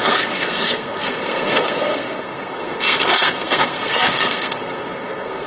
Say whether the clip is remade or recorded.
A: remade